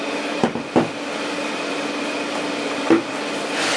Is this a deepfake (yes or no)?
no